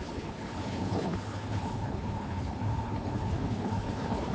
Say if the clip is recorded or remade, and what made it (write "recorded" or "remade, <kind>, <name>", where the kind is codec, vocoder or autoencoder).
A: remade, codec, HILCodec